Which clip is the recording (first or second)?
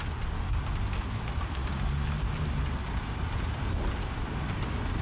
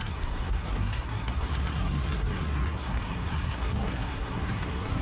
first